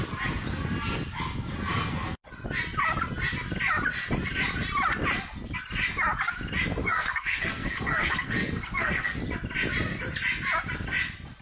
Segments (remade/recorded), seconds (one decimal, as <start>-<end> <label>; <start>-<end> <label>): 0.0-1.7 recorded; 1.7-2.2 remade; 2.2-6.8 recorded; 6.8-9.2 remade; 9.2-11.4 recorded